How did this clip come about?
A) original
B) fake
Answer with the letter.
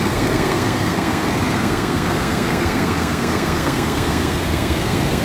B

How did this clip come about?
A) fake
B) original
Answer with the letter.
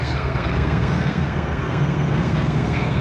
A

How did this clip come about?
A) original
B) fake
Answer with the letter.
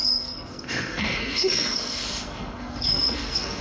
B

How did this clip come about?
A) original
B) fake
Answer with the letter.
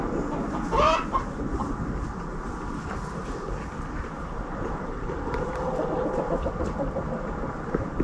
A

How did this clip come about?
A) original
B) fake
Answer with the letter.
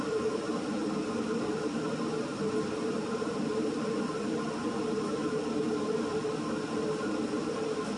A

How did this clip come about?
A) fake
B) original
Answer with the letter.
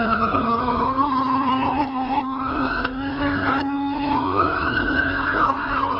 A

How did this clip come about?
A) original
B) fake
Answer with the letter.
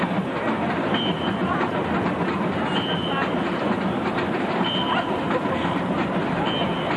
A